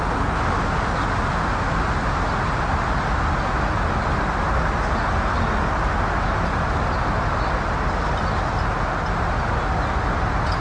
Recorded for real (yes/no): yes